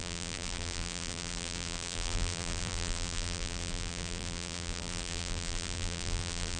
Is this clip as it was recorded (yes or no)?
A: no